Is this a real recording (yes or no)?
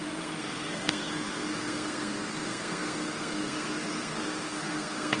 no